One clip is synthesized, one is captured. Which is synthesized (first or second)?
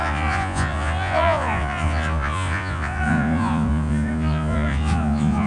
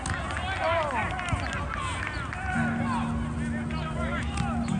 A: first